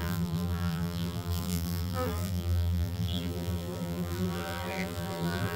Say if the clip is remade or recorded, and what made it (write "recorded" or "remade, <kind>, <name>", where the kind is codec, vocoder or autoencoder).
remade, vocoder, BigVGAN v2